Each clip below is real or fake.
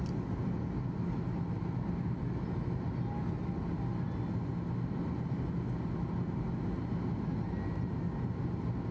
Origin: real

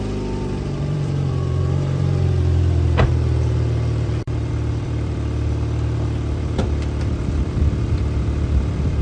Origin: fake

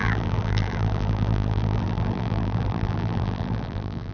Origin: fake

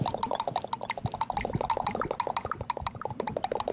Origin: real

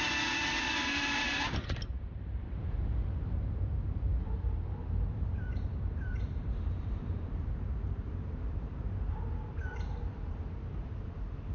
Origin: fake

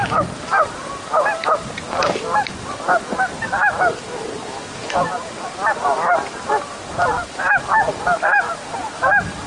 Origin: fake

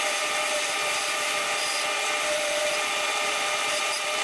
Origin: fake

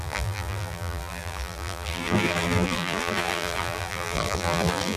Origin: fake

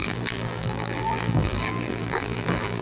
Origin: fake